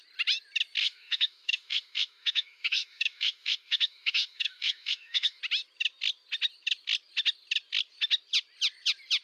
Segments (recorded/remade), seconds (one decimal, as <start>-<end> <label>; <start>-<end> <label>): 0.0-0.8 recorded; 0.8-5.4 remade; 5.4-9.2 recorded